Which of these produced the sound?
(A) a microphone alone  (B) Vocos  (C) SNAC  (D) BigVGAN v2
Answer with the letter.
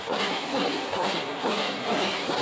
C